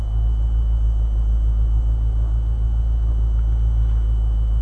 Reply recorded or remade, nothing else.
recorded